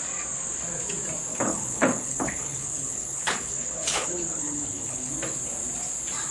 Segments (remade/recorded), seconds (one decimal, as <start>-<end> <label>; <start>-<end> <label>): 0.0-1.3 recorded; 1.3-5.1 remade; 5.1-6.3 recorded